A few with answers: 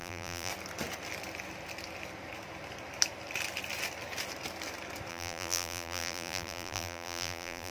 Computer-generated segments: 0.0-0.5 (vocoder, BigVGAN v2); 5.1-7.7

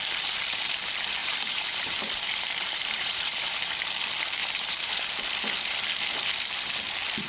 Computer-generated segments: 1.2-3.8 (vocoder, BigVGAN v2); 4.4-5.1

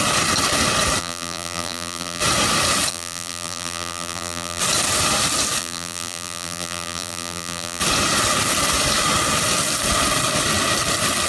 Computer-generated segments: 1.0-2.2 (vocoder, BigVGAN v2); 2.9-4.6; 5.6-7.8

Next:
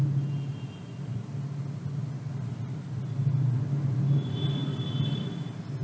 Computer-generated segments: 2.3-3.4 (vocoder, BigVGAN v2)

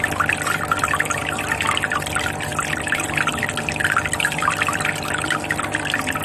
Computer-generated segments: none

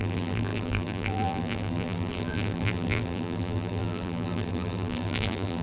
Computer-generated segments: 0.0-5.6 (vocoder, BigVGAN v2)

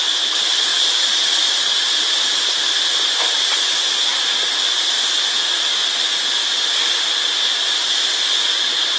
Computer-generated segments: 0.0-9.0 (vocoder, BigVGAN v2)

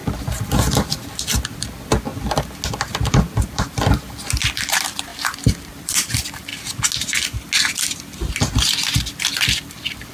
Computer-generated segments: 0.0-2.1 (vocoder, BigVGAN v2); 2.7-6.5; 8.3-10.1